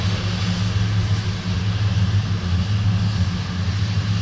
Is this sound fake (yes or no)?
no